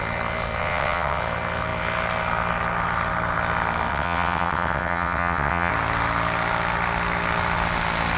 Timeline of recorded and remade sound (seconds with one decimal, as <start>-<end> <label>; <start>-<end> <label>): 0.0-0.6 recorded; 0.6-1.2 remade; 1.2-3.9 recorded; 3.9-5.7 remade; 5.7-8.2 recorded